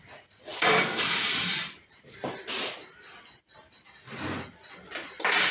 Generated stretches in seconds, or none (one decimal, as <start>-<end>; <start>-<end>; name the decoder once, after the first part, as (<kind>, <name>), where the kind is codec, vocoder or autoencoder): 0.5-2.4 (vocoder, BigVGAN v2)